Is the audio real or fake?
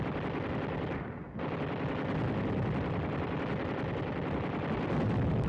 real